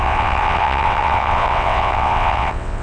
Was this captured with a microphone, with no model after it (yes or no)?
no